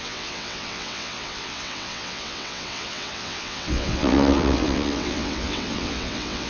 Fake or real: fake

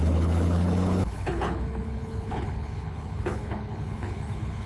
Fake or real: fake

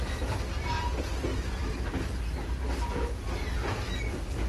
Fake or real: real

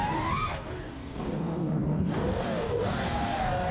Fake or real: fake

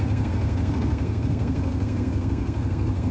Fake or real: fake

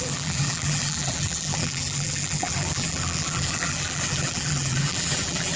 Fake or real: fake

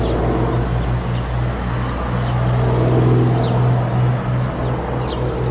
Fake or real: real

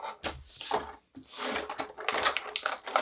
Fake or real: real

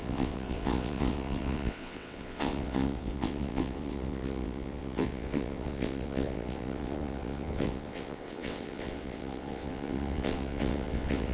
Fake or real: fake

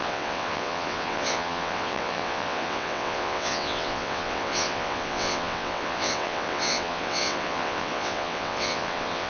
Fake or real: fake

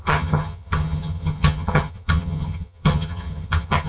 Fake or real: fake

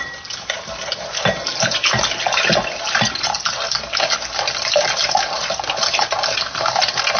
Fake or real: fake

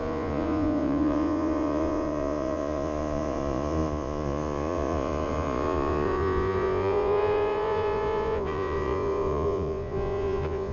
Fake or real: fake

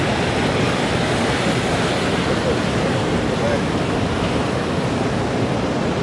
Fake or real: real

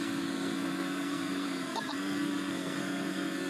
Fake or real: fake